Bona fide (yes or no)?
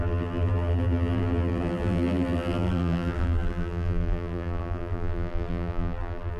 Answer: no